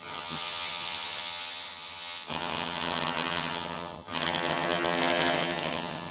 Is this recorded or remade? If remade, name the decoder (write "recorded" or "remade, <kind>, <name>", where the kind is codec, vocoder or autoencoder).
remade, vocoder, HiFi-GAN